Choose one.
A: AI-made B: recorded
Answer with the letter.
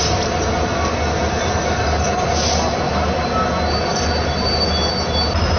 B